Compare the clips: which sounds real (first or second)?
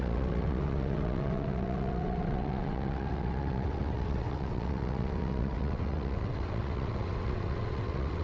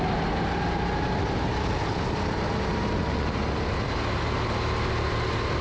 second